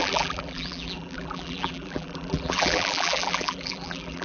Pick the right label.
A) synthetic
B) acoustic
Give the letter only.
A